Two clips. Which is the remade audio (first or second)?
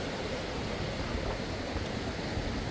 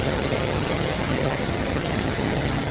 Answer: second